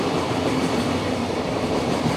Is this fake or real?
real